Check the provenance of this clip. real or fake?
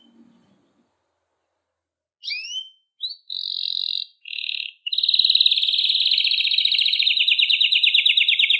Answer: real